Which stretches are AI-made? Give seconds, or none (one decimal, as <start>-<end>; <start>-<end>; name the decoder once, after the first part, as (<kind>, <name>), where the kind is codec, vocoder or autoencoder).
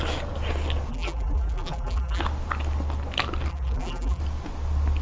0.9-2.2 (vocoder, BigVGAN v2); 3.5-4.2